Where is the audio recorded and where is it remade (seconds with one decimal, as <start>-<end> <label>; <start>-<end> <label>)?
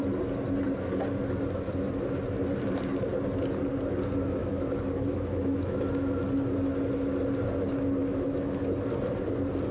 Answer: 0.0-4.4 recorded; 4.4-6.2 remade; 6.2-8.0 recorded; 8.0-8.6 remade; 8.6-9.7 recorded